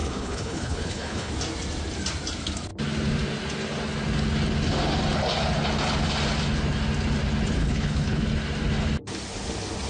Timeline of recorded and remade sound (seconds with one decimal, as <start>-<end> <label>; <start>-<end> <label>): 0.0-1.3 remade; 1.3-7.6 recorded; 7.6-8.2 remade; 8.2-9.9 recorded